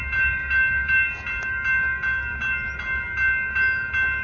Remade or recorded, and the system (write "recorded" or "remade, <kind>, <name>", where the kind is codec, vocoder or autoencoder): recorded